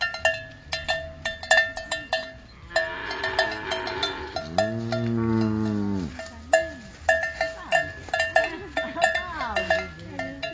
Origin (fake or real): real